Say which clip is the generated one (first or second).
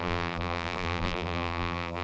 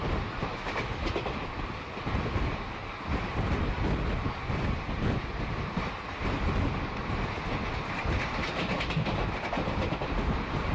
first